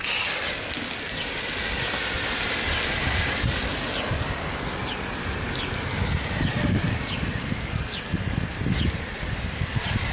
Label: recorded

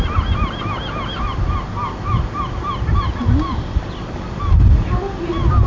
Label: recorded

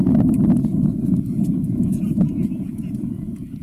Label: remade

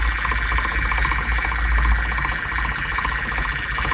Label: recorded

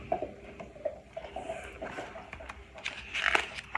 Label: recorded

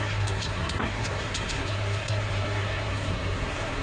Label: remade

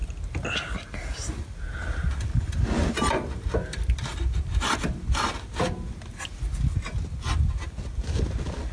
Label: recorded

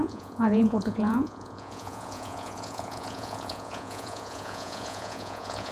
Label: remade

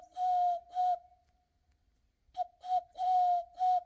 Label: recorded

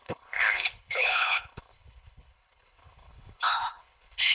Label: remade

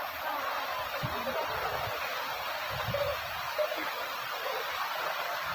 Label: remade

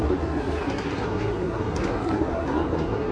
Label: remade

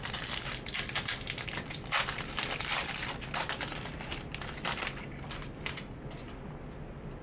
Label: remade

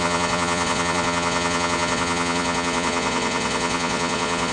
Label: remade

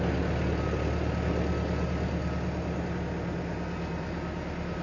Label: recorded